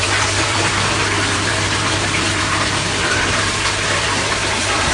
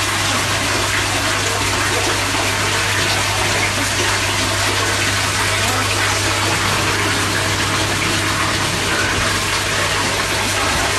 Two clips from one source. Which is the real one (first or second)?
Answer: second